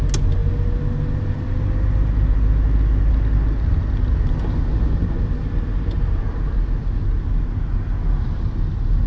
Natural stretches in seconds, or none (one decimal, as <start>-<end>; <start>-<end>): 0.0-9.1